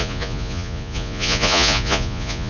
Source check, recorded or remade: remade